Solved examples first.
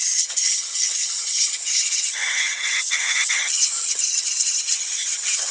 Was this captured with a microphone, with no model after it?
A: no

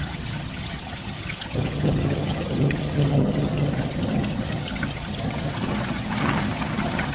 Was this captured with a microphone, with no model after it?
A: no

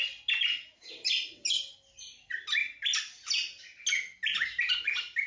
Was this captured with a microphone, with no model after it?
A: yes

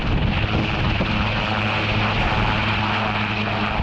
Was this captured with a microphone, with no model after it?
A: yes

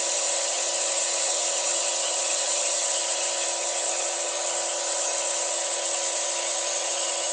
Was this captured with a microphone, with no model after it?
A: no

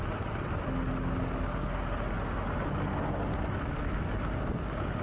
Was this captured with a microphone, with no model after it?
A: yes